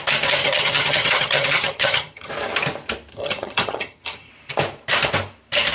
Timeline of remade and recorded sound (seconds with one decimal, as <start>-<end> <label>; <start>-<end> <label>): 0.0-0.4 recorded; 0.4-2.3 remade; 2.3-3.1 recorded; 3.1-4.3 remade; 4.3-5.7 recorded